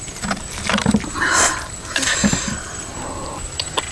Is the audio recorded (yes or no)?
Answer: yes